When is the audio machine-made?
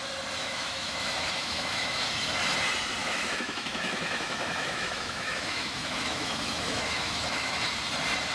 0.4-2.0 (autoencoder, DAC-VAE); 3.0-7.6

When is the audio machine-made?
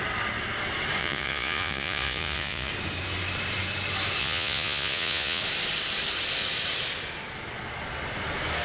1.0-2.7 (vocoder, Vocos); 4.2-5.4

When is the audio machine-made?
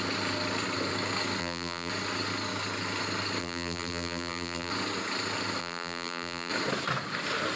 1.4-1.9 (vocoder, BigVGAN v2); 3.4-4.7; 5.6-6.5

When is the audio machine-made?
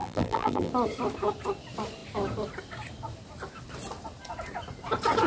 0.0-0.7 (vocoder, BigVGAN v2)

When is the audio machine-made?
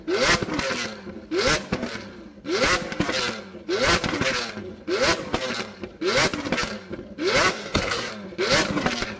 7.5-8.1 (codec, SNAC)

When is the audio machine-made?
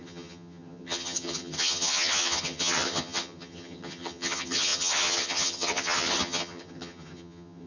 0.0-7.7 (vocoder, HiFi-GAN)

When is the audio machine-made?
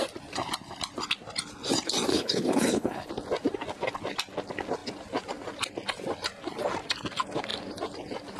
2.1-3.1 (codec, HILCodec)